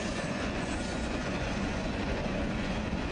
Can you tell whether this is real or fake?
fake